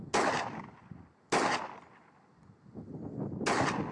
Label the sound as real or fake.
real